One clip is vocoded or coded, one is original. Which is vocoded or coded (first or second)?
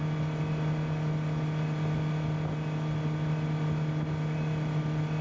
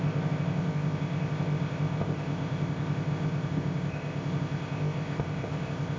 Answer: second